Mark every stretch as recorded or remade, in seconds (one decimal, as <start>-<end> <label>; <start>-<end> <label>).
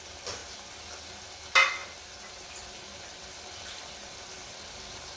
0.0-5.2 recorded